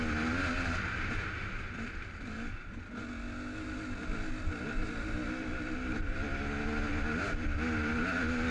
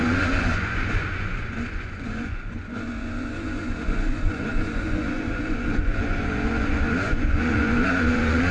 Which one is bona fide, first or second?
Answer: first